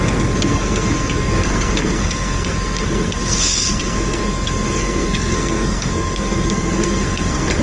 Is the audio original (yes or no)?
no